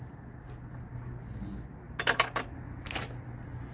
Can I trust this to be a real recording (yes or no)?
yes